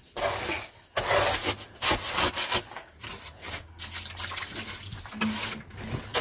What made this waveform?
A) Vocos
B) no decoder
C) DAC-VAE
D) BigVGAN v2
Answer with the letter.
B